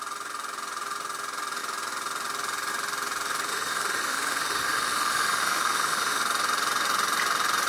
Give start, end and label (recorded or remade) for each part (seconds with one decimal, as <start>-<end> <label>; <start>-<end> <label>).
0.0-3.5 recorded; 3.5-6.2 remade; 6.2-7.7 recorded